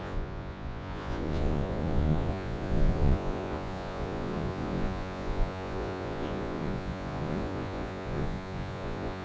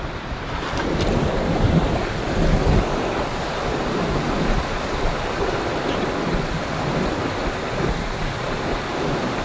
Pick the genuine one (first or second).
second